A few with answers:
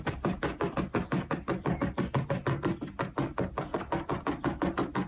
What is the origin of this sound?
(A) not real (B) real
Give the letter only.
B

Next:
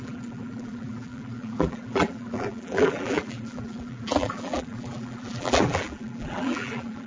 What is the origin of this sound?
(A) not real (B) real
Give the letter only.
A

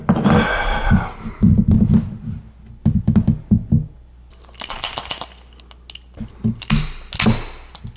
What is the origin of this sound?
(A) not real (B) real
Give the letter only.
B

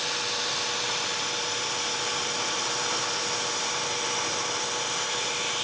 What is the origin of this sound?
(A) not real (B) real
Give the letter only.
B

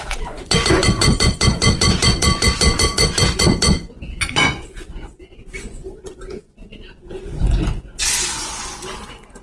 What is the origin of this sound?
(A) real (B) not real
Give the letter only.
B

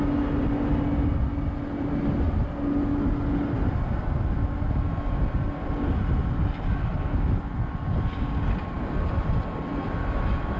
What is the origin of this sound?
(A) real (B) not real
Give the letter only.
A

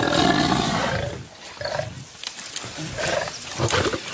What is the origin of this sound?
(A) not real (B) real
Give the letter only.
B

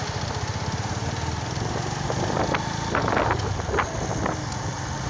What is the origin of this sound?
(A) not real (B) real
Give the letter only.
B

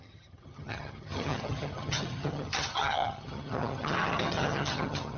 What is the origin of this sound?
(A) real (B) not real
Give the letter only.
B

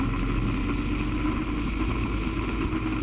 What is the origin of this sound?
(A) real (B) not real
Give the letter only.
A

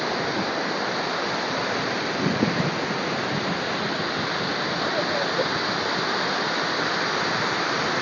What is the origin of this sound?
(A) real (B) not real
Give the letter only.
A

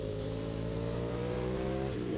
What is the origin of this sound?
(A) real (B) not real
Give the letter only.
B